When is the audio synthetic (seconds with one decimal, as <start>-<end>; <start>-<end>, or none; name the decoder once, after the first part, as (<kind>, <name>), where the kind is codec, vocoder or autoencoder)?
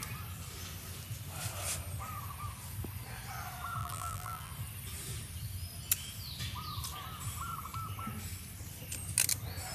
3.8-4.5 (vocoder, BigVGAN v2)